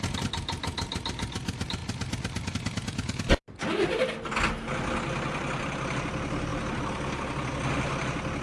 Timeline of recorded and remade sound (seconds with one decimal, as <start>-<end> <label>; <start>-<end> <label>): 0.0-6.5 recorded; 6.5-7.5 remade; 7.5-8.4 recorded

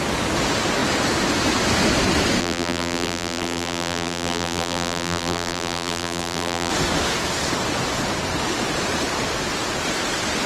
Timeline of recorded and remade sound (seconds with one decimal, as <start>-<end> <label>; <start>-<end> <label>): 0.0-2.4 recorded; 2.4-6.7 remade; 6.7-10.5 recorded